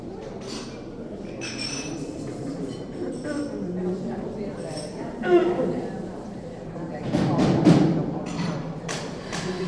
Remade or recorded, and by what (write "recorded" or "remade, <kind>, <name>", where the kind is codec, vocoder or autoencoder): remade, vocoder, BigVGAN v2